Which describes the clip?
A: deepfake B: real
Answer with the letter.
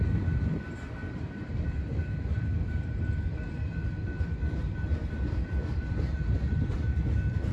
A